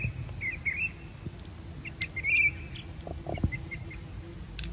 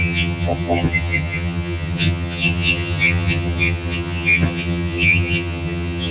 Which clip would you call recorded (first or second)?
first